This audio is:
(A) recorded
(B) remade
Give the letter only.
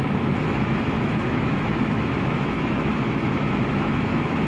B